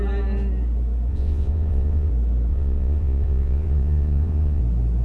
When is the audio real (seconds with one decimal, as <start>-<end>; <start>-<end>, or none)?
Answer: 0.0-1.1; 2.1-2.5; 4.6-5.0